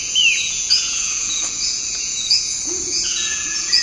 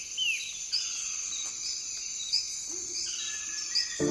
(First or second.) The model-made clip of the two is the first